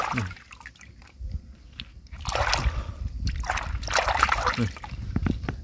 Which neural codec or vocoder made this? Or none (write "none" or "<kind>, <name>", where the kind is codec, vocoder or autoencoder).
none